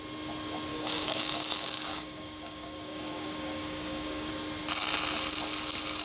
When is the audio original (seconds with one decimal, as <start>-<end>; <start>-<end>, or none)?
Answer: 0.0-0.7; 4.3-6.0